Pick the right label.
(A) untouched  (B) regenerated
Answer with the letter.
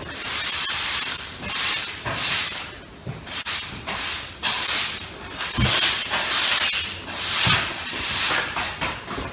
A